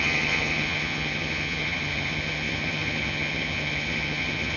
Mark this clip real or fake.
fake